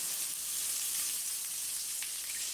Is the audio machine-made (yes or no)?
yes